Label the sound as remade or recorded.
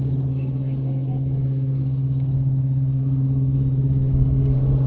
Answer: remade